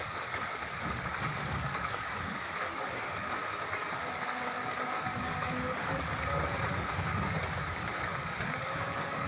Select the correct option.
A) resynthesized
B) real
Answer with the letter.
A